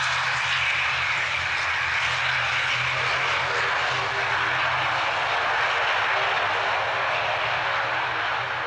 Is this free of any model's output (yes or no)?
yes